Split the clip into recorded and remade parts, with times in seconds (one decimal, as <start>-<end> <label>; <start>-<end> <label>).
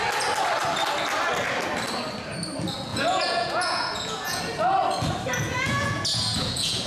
0.0-2.9 recorded; 2.9-4.4 remade; 4.4-5.5 recorded; 5.5-6.9 remade